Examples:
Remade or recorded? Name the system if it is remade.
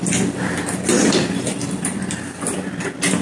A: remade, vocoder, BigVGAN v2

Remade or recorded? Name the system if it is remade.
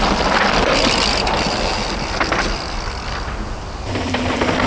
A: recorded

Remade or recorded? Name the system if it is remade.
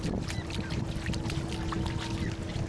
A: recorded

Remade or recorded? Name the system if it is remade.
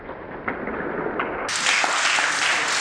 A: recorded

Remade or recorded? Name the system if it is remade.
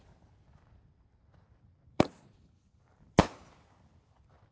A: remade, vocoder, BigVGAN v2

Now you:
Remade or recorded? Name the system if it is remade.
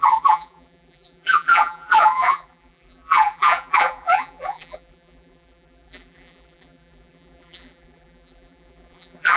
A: remade, vocoder, BigVGAN v2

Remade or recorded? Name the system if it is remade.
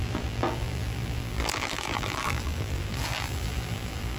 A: remade, vocoder, BigVGAN v2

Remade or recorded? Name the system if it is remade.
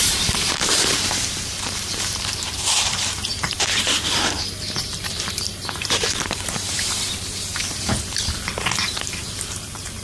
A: remade, vocoder, BigVGAN v2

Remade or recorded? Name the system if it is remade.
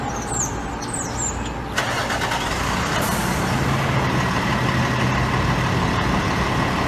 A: recorded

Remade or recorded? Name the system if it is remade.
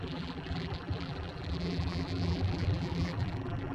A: remade, vocoder, BigVGAN v2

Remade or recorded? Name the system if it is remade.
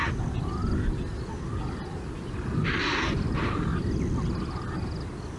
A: recorded